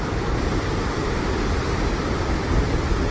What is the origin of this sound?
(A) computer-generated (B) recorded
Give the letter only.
B